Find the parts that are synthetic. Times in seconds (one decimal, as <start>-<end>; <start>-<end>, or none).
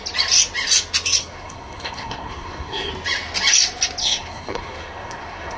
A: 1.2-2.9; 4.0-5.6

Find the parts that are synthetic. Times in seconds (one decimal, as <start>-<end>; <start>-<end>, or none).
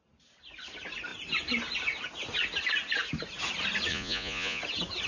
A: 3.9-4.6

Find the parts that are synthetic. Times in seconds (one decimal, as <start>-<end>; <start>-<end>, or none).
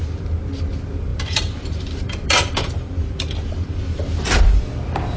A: 1.1-4.0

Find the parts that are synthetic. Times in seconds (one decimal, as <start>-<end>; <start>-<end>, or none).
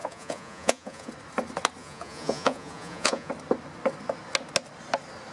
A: 0.0-1.1; 1.8-3.3